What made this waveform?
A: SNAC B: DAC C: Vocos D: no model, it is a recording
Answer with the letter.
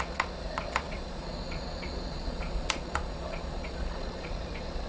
C